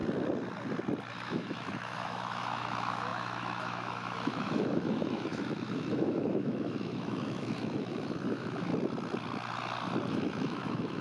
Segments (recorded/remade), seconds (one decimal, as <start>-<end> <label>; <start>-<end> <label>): 0.0-1.1 recorded; 1.1-8.7 remade; 8.7-10.1 recorded; 10.1-11.0 remade